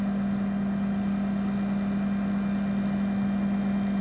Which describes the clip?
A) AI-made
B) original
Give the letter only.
B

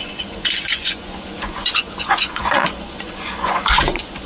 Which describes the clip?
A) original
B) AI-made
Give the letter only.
B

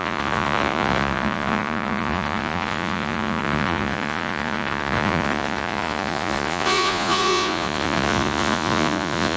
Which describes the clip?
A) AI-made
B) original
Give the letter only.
A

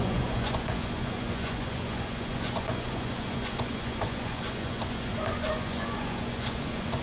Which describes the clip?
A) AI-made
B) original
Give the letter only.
A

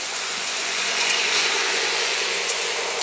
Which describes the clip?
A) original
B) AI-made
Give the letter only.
B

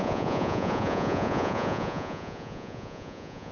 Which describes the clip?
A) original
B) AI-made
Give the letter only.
B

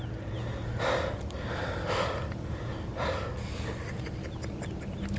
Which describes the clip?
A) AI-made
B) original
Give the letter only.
B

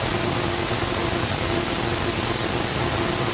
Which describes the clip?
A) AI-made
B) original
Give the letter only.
B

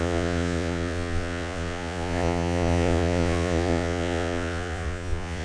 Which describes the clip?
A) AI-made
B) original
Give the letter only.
A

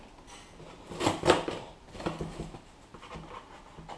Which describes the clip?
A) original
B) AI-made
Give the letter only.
A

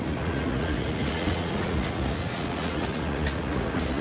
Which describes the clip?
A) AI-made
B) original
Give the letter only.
A